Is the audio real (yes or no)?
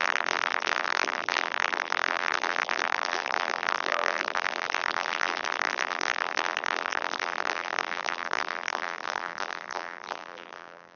no